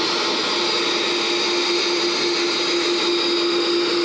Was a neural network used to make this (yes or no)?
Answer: no